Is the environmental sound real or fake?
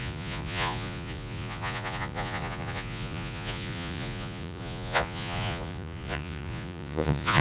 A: fake